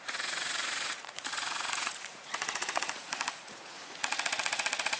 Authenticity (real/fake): fake